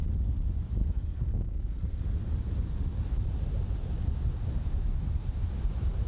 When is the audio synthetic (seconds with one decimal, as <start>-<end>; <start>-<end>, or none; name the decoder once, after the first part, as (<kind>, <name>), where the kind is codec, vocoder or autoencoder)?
0.8-2.0 (codec, SNAC)